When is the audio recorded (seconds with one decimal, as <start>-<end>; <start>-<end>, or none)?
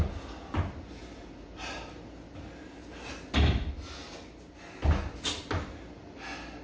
0.0-6.6